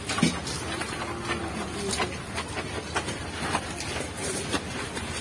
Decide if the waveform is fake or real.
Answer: real